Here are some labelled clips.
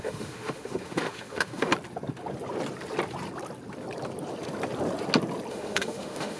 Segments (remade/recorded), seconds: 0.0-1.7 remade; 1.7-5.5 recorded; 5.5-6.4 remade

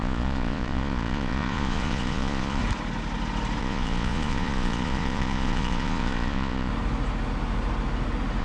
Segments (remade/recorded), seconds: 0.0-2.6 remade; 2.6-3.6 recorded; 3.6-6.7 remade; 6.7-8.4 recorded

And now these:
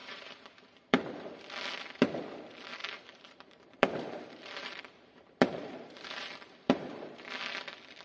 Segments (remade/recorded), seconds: 0.0-1.4 remade; 1.4-2.8 recorded; 2.8-7.3 remade; 7.3-8.0 recorded

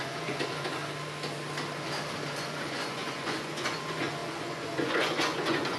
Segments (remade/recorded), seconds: 0.0-0.8 remade; 0.8-2.4 recorded; 2.4-5.8 remade

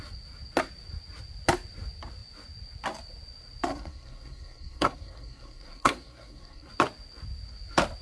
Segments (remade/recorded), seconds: 0.0-3.7 recorded; 3.7-6.7 remade; 6.7-8.0 recorded

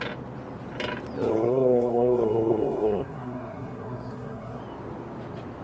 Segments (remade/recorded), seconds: 0.0-1.3 recorded; 1.3-4.6 remade; 4.6-5.6 recorded

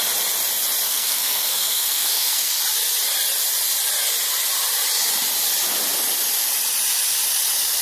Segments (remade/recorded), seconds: 0.0-0.9 recorded; 0.9-2.6 remade; 2.6-7.8 recorded

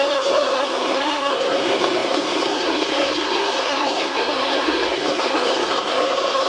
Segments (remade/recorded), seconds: 0.0-6.5 remade